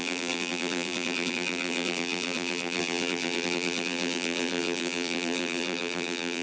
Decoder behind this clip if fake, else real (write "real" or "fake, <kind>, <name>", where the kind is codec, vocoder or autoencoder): fake, vocoder, BigVGAN v2